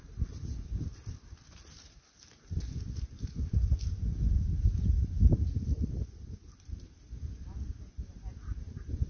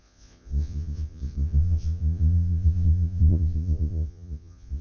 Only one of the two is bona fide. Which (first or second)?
first